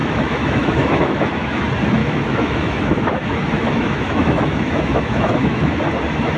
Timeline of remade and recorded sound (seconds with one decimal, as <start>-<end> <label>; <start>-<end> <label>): 0.0-1.6 remade; 1.6-2.0 recorded; 2.0-5.8 remade; 5.8-6.4 recorded